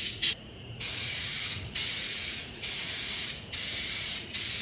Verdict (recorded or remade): remade